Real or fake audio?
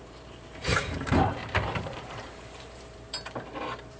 fake